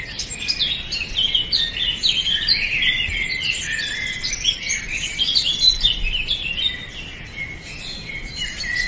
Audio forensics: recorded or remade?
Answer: recorded